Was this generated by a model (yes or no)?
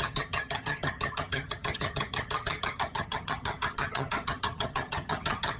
yes